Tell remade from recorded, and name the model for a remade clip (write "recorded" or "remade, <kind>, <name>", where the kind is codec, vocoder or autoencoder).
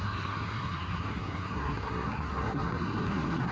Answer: remade, codec, SNAC